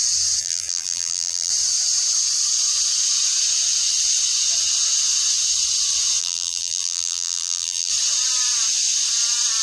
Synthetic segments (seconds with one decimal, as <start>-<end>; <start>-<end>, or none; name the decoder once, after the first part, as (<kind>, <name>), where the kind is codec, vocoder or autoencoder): 0.4-1.5 (vocoder, BigVGAN v2); 6.2-7.9